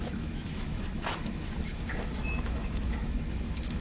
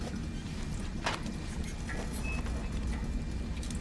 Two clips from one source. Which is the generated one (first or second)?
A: first